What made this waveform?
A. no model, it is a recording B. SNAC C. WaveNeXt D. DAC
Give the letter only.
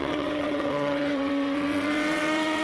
C